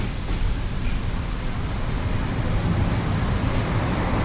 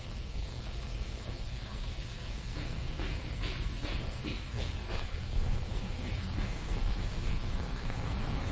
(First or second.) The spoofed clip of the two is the second